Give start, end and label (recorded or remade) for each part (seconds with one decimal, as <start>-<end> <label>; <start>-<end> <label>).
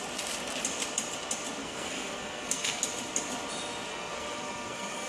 0.0-1.6 recorded; 1.6-2.8 remade; 2.8-3.9 recorded; 3.9-5.1 remade